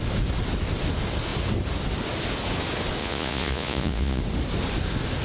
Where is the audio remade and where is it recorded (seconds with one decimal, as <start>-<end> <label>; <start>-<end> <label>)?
0.0-3.0 recorded; 3.0-4.2 remade; 4.2-5.2 recorded